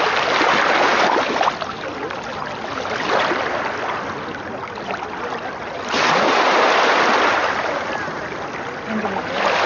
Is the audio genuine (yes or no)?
yes